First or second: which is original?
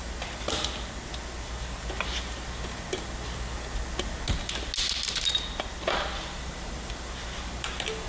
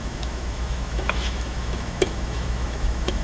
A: first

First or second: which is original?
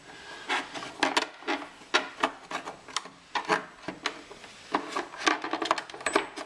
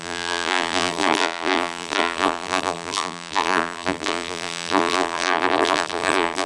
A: first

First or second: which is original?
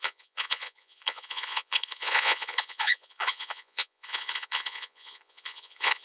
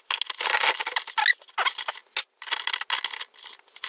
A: second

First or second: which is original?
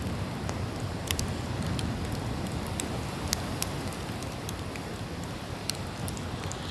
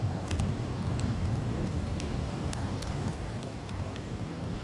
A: first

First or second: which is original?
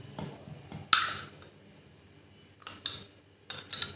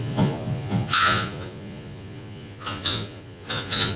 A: first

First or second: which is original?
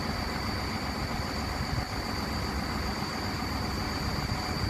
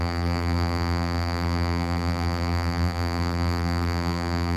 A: first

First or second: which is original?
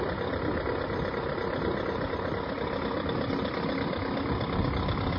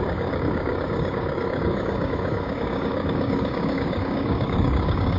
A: first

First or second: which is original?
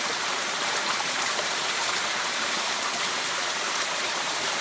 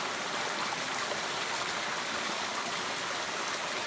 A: second